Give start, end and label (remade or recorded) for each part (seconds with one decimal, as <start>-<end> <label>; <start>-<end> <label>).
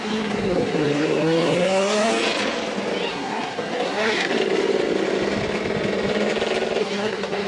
0.0-2.1 remade; 2.1-3.1 recorded; 3.1-4.3 remade; 4.3-6.8 recorded; 6.8-7.5 remade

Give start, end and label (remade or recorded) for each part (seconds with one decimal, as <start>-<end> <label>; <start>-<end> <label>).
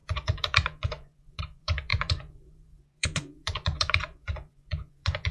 0.0-5.3 remade